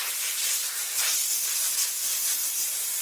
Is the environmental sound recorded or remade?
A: remade